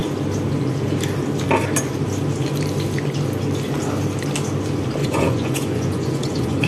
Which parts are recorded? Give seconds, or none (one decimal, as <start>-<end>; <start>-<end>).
0.0-5.0